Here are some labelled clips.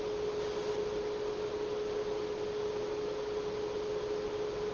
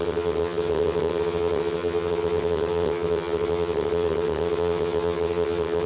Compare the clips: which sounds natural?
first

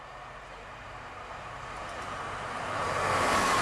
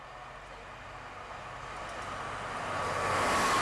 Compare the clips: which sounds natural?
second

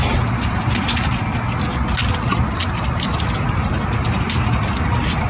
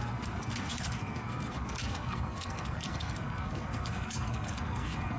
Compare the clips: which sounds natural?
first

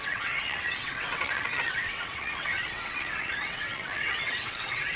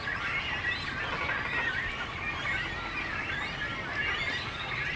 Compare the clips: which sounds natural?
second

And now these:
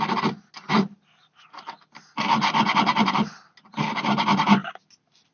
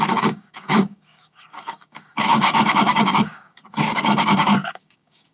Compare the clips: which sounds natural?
first